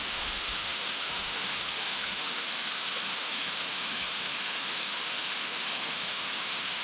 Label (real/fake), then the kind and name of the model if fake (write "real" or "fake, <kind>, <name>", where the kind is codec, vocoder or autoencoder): fake, autoencoder, DAC-VAE